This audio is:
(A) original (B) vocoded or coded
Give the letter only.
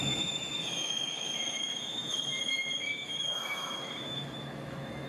B